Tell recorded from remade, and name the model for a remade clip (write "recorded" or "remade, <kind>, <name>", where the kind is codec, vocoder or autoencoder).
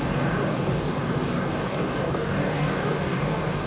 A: remade, codec, DAC